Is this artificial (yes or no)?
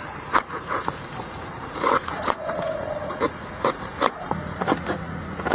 yes